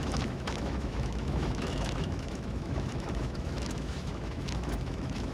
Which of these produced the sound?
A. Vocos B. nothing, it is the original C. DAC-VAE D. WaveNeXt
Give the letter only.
C